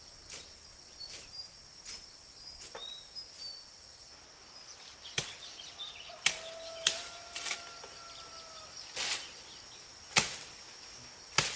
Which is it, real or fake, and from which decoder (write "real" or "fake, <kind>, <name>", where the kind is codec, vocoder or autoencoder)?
real